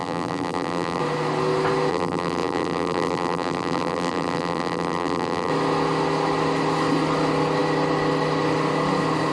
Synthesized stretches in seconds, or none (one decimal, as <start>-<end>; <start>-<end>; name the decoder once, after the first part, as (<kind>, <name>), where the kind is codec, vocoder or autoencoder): 0.0-1.0 (vocoder, BigVGAN v2); 1.9-5.5